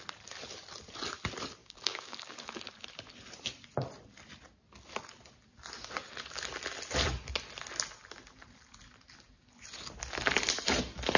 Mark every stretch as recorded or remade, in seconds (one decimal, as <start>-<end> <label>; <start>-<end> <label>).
0.0-1.6 recorded; 1.6-2.6 remade; 2.6-11.2 recorded